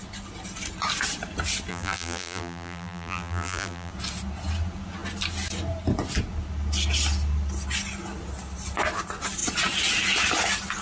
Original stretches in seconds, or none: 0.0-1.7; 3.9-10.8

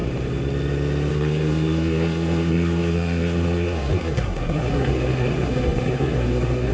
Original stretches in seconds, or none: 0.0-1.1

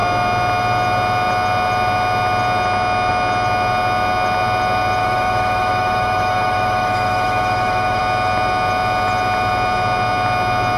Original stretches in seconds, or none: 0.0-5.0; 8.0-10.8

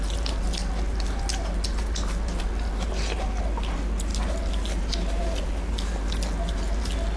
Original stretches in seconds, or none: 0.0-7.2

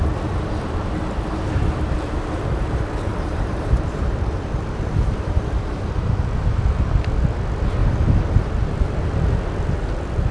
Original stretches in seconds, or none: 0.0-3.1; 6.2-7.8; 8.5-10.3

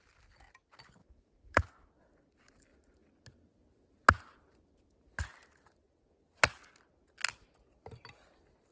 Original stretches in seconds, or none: 0.0-1.0; 1.9-8.7